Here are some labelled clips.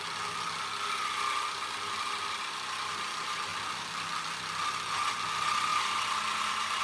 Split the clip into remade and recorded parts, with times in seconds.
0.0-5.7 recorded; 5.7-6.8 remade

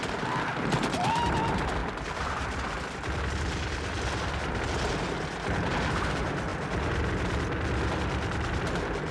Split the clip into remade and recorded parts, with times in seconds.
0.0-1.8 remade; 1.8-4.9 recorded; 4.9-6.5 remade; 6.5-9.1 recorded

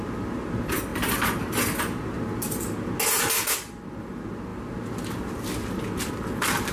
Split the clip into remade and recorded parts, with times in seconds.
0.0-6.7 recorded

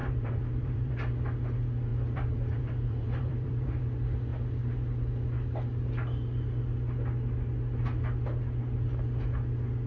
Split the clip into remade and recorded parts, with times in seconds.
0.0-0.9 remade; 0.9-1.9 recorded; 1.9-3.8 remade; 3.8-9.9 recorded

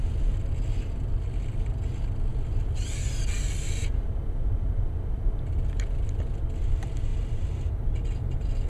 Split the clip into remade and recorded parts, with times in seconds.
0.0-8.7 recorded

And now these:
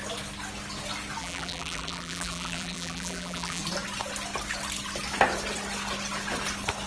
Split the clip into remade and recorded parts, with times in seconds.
0.0-1.2 recorded; 1.2-3.6 remade; 3.6-6.9 recorded